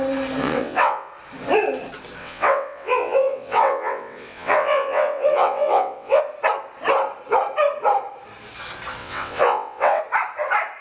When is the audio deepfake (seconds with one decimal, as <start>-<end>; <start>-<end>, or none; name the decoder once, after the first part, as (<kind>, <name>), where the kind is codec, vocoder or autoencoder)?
0.4-1.1 (vocoder, WaveNeXt); 2.2-6.2; 9.0-10.0